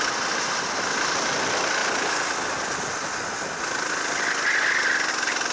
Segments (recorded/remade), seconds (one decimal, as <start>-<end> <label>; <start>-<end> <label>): 0.0-5.5 recorded